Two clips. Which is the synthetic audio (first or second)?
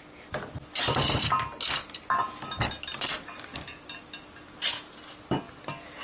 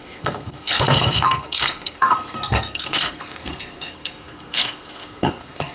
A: second